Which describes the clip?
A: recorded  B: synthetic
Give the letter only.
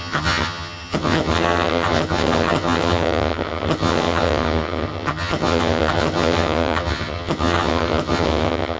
B